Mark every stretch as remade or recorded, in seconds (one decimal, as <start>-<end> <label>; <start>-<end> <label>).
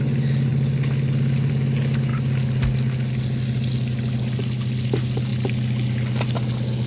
0.0-6.9 recorded